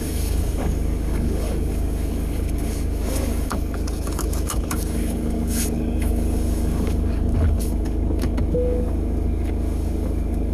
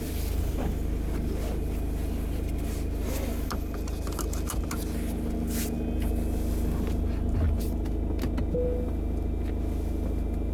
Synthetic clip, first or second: first